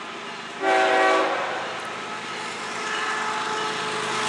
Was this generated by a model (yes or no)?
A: no